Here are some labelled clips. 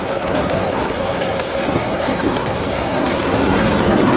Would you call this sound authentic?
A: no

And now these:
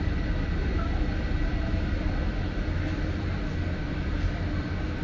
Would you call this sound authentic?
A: yes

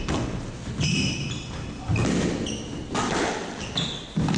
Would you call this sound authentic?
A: yes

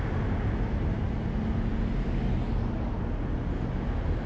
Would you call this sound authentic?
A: yes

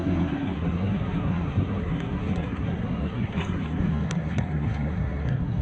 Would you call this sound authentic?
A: no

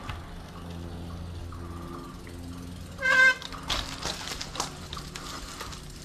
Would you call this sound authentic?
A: yes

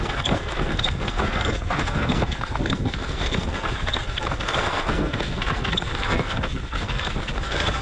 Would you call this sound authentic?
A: no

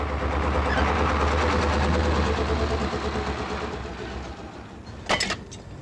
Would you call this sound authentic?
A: yes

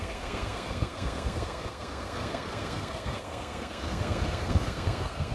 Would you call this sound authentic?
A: no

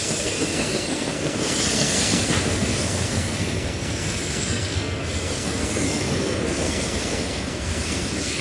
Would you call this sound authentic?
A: no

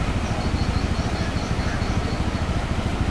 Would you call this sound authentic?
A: yes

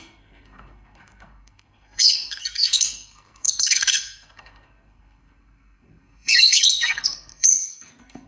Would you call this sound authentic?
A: no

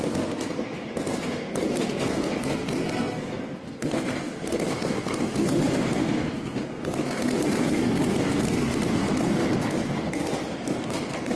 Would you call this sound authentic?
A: no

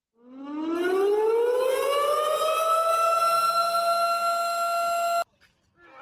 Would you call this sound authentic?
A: yes